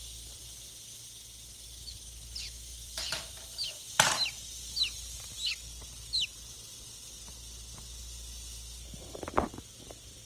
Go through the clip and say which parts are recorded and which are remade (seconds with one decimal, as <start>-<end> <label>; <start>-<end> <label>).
0.0-2.7 recorded; 2.7-3.7 remade; 3.7-10.3 recorded

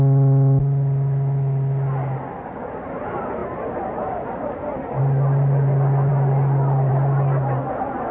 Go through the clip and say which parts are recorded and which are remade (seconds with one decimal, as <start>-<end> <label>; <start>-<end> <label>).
0.0-8.1 recorded